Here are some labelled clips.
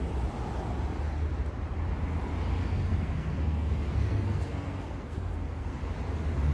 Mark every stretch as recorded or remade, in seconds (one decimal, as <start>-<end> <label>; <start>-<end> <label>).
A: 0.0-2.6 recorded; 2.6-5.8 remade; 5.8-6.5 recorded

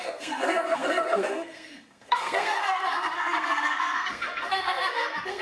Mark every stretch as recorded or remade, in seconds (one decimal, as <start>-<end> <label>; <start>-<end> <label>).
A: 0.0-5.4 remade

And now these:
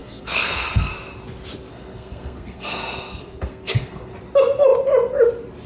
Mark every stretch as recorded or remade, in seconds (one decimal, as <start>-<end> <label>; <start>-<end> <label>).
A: 0.0-0.9 remade; 0.9-1.7 recorded; 1.7-4.1 remade; 4.1-5.7 recorded